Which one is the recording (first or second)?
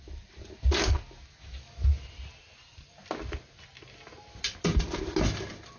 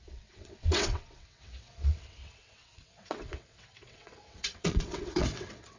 first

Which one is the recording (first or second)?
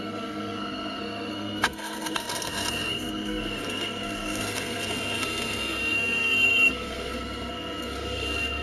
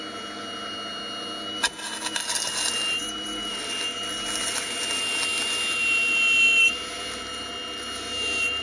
second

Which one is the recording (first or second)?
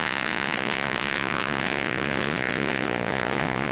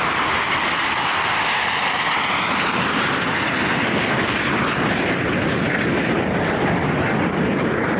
second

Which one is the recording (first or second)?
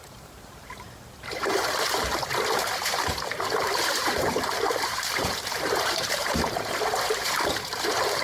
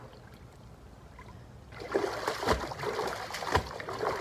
second